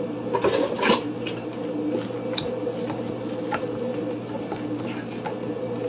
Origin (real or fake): real